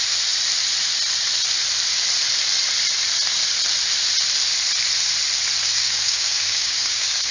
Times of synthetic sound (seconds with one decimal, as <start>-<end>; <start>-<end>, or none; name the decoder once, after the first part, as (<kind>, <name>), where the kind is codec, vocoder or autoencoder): 5.6-7.3 (codec, DAC)